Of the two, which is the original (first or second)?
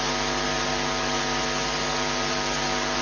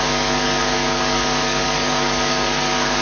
first